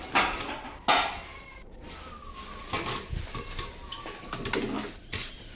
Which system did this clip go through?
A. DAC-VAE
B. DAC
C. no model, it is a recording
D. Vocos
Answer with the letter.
C